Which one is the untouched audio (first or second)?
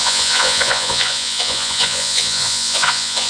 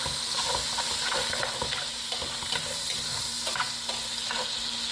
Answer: second